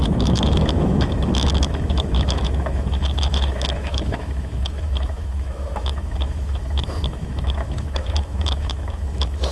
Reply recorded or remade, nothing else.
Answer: remade